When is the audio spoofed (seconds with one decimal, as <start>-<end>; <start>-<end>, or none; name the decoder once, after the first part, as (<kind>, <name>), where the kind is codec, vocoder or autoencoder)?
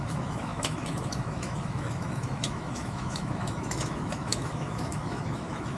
0.0-5.8 (autoencoder, DAC-VAE)